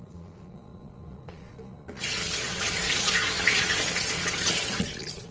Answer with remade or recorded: remade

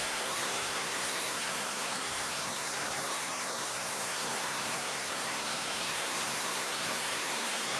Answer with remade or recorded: remade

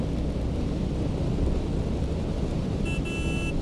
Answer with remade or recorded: recorded